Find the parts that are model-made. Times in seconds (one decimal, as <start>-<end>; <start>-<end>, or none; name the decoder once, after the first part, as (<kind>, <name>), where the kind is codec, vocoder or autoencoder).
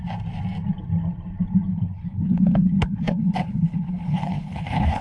1.7-5.0 (codec, HILCodec)